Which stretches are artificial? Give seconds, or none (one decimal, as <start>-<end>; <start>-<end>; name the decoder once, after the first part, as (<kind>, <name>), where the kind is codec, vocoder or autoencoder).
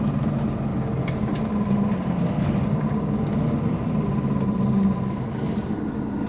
none